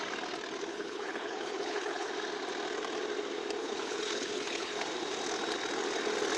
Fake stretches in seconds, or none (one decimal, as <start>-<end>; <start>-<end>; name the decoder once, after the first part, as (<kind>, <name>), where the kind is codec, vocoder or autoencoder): 0.7-2.1 (codec, HILCodec); 3.6-4.8